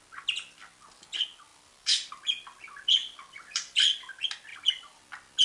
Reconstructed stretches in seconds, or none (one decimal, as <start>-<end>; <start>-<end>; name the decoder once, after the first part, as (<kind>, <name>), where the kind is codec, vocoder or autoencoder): 1.5-2.1 (vocoder, BigVGAN v2); 3.0-4.1; 4.5-5.0